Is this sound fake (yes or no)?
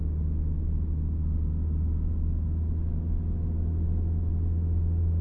no